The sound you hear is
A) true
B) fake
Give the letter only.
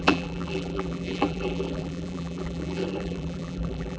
B